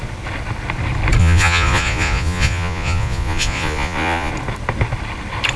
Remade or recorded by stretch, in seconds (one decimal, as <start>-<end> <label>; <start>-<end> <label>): 0.0-1.2 recorded; 1.2-4.3 remade; 4.3-5.6 recorded